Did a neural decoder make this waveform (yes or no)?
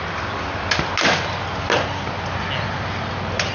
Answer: no